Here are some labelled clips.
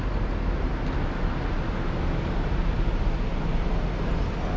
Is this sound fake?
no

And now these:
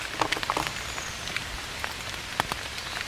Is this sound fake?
no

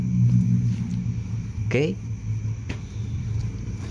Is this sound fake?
no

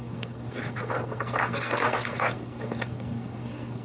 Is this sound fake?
yes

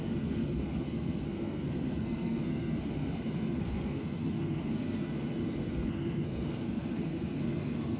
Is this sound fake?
yes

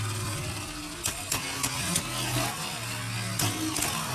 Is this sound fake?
no